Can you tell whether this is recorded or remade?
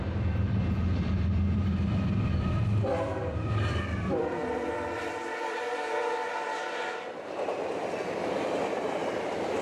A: remade